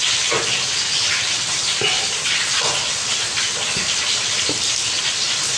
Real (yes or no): yes